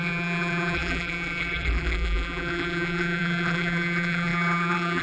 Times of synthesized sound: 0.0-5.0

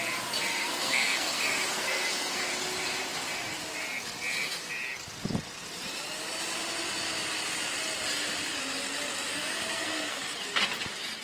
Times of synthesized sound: 0.5-2.5; 9.3-10.2